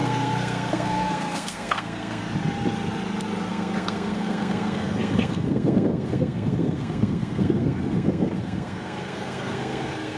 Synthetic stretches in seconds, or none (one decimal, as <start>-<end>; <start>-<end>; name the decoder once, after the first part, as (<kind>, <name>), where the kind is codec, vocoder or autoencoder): 0.0-2.2 (codec, SNAC); 3.5-10.2